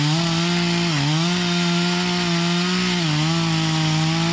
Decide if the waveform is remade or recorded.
recorded